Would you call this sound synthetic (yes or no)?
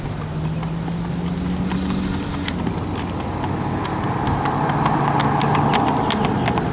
no